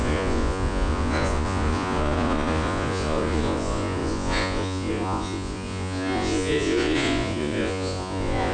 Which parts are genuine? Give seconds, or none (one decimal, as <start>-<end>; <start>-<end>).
none